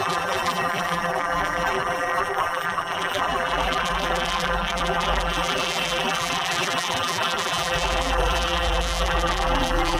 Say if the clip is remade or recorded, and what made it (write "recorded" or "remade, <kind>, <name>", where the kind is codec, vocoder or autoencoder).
remade, vocoder, BigVGAN v2